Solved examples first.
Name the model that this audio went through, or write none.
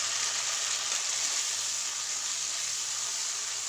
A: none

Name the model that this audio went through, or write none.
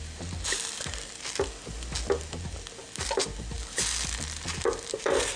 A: none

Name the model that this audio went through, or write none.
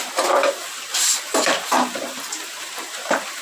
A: vocoder, BigVGAN v2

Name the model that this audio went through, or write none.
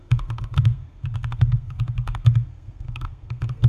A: codec, SNAC